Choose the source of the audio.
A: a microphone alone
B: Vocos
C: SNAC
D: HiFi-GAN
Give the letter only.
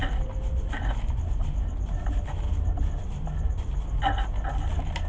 A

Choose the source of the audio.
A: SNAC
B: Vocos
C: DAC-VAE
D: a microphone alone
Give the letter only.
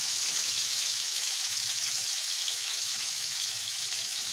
C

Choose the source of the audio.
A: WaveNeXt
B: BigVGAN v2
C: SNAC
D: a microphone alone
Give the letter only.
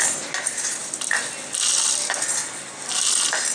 D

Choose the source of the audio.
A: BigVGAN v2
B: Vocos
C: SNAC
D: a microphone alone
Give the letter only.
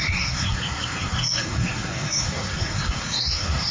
C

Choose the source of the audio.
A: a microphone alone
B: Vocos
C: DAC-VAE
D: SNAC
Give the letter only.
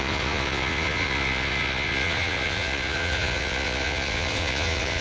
B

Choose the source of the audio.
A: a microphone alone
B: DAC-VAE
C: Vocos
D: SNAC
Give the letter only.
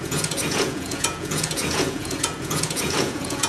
C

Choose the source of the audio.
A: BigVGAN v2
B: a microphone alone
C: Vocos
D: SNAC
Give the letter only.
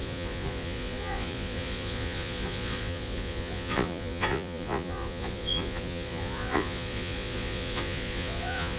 C